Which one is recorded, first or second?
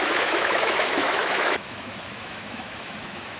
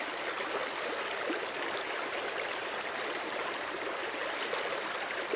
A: second